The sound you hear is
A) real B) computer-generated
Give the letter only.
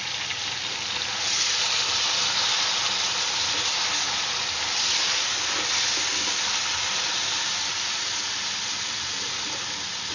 A